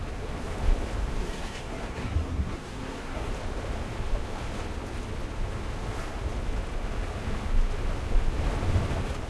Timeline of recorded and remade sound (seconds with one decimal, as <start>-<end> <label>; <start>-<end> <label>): 0.0-1.2 recorded; 1.2-3.3 remade; 3.3-9.3 recorded